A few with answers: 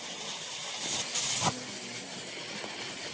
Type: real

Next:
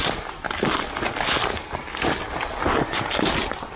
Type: real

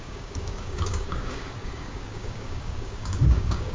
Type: fake